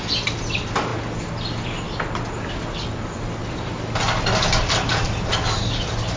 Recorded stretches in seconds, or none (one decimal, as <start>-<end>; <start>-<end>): 0.0-3.4; 5.1-6.2